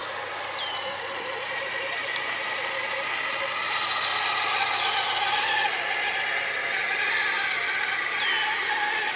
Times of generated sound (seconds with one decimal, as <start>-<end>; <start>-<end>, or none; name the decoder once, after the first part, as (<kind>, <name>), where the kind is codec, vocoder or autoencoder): none